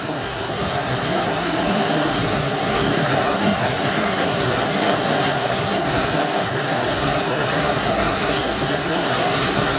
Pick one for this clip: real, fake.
fake